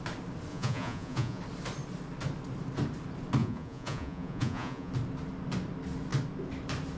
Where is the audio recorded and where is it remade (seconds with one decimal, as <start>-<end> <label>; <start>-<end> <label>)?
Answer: 0.0-0.5 recorded; 0.5-1.4 remade; 1.4-3.4 recorded; 3.4-4.9 remade; 4.9-7.0 recorded